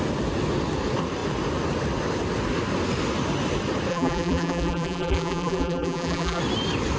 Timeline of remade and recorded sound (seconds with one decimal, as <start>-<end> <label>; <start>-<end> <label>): 0.0-3.9 recorded; 3.9-6.4 remade; 6.4-7.0 recorded